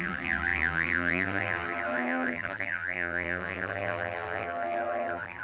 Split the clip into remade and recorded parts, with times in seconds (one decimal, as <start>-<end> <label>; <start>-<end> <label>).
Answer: 0.0-5.4 remade